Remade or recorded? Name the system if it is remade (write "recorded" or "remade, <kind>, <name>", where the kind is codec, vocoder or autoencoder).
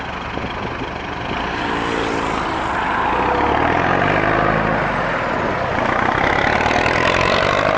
recorded